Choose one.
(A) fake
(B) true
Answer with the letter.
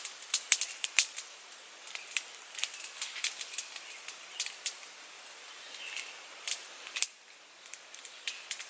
B